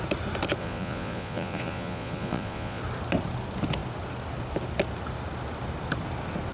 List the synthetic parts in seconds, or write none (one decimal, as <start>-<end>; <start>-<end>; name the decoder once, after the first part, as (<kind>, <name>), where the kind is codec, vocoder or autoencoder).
0.6-2.8 (vocoder, Vocos)